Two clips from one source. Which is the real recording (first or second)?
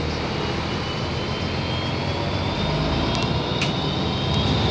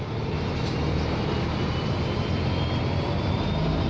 first